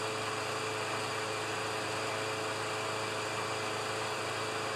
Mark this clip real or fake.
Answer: real